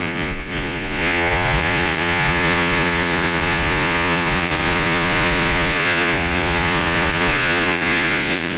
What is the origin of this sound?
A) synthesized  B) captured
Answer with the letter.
A